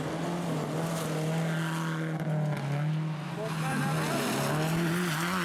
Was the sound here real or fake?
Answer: real